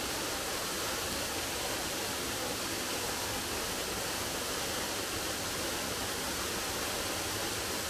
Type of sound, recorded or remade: recorded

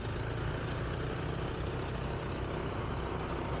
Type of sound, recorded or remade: recorded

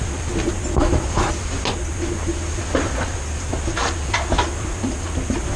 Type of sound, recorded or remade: recorded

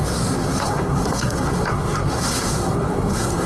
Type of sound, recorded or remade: remade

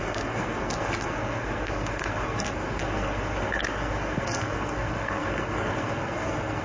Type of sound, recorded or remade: remade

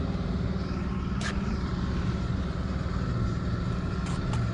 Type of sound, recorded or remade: recorded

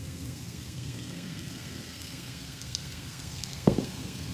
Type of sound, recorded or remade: remade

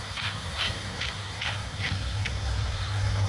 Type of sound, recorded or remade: remade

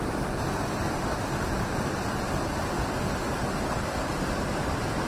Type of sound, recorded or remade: recorded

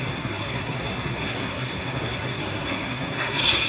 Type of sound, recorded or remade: remade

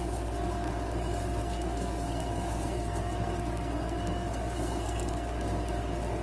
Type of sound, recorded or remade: remade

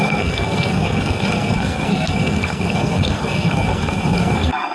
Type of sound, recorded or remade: remade